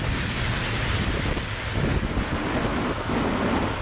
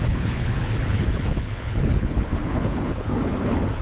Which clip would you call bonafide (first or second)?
first